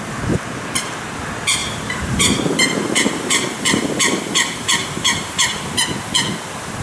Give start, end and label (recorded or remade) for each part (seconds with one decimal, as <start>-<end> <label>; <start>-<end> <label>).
0.0-1.6 recorded; 1.6-5.7 remade; 5.7-6.8 recorded